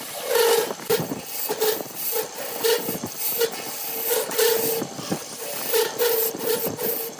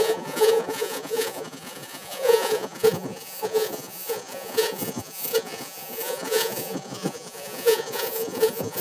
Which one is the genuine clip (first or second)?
first